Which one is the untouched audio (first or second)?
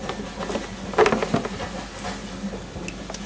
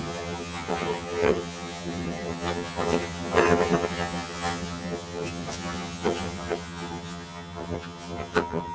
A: first